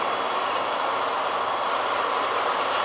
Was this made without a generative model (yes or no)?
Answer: yes